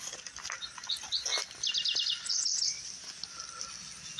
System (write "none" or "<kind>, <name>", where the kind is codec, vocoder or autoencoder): none